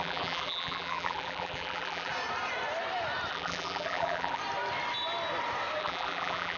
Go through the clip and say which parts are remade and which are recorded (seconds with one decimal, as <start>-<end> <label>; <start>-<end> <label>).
0.0-2.1 remade; 2.1-3.3 recorded; 3.3-4.4 remade; 4.4-5.8 recorded; 5.8-6.6 remade